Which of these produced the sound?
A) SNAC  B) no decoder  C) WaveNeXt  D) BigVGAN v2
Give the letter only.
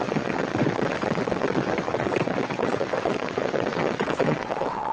C